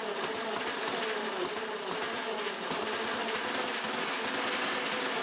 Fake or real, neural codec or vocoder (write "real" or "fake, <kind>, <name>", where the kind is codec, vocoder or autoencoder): real